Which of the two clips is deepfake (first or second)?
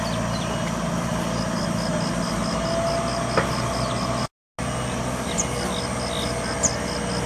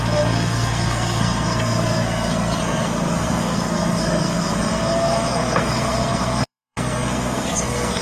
second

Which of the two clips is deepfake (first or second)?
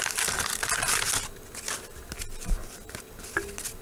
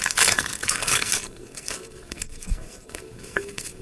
second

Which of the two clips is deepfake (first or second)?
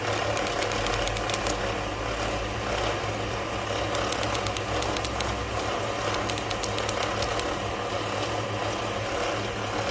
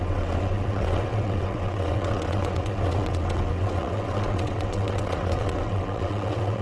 second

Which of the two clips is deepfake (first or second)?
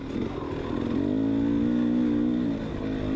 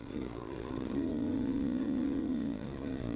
second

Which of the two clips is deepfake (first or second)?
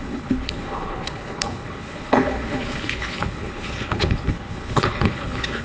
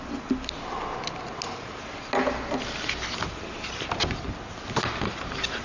first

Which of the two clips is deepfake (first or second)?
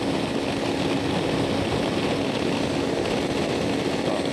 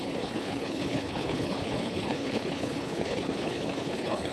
second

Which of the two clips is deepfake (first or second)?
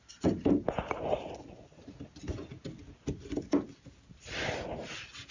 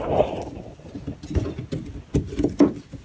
second